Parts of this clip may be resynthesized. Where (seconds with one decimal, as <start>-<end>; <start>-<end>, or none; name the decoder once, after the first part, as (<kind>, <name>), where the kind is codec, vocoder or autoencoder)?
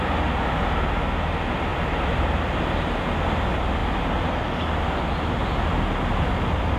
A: 1.7-2.6 (vocoder, BigVGAN v2); 3.8-5.0